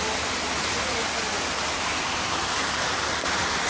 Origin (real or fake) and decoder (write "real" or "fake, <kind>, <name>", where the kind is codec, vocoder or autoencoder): real